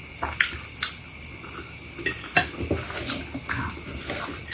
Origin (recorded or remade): recorded